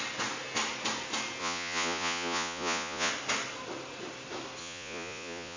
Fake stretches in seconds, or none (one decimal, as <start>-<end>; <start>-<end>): 1.4-3.1; 4.6-5.6